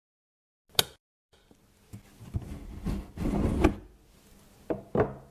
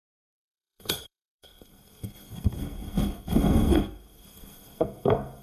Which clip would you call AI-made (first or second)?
second